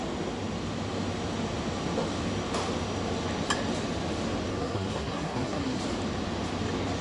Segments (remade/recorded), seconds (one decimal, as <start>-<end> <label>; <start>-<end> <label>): 0.0-4.5 recorded; 4.5-5.8 remade; 5.8-7.0 recorded